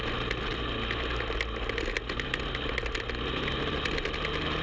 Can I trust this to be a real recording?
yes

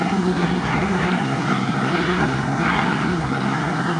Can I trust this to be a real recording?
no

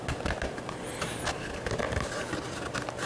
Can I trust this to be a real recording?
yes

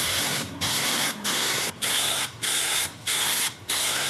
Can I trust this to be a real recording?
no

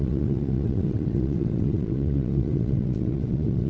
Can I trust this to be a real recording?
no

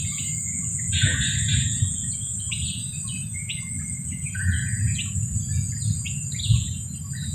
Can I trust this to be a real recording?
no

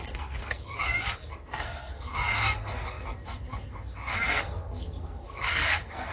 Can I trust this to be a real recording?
no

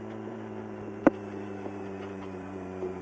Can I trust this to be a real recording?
no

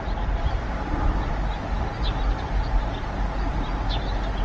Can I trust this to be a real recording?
yes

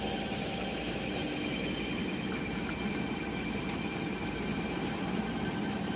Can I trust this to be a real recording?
yes